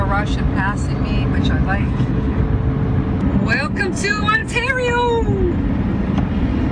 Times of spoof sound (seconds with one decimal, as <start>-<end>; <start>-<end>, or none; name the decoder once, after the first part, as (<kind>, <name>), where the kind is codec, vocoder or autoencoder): 1.8-2.4 (codec, HILCodec)